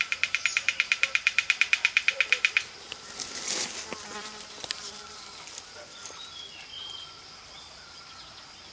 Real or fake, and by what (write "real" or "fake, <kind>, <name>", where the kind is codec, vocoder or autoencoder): fake, vocoder, BigVGAN v2